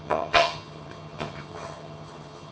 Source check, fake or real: fake